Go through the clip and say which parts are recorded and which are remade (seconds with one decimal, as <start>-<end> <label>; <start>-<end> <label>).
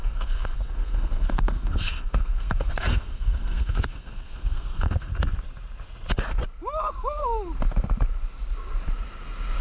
0.0-5.1 remade; 5.1-9.6 recorded